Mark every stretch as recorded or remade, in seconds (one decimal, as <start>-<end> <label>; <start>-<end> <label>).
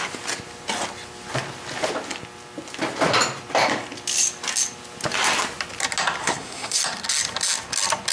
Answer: 0.0-6.2 recorded; 6.2-6.8 remade; 6.8-8.1 recorded